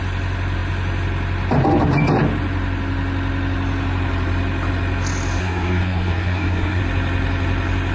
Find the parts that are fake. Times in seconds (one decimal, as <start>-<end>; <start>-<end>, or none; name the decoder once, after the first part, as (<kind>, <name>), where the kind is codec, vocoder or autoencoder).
5.4-6.8 (codec, SNAC)